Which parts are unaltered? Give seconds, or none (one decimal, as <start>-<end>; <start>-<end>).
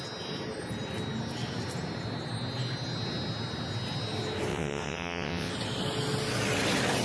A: 0.0-4.5; 5.5-7.0